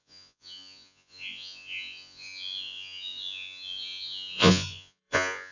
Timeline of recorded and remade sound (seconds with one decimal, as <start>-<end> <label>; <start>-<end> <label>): 0.0-5.5 remade

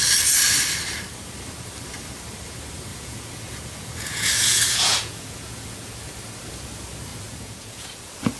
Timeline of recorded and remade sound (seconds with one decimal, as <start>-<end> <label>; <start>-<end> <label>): 0.0-2.9 recorded; 2.9-5.9 remade; 5.9-7.1 recorded; 7.1-8.0 remade; 8.0-8.4 recorded

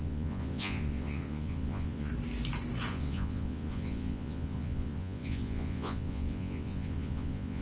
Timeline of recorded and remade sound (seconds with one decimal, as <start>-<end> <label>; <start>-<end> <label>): 0.0-2.1 remade; 2.1-2.9 recorded; 2.9-7.6 remade

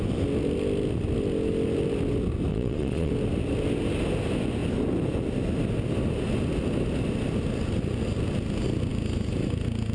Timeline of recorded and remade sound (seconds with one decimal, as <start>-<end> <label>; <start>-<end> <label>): 0.0-2.5 recorded; 2.5-3.1 remade; 3.1-9.9 recorded

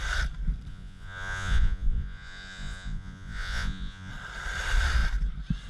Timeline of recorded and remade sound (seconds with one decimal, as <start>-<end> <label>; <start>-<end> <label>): 0.0-0.7 recorded; 0.7-4.1 remade; 4.1-5.7 recorded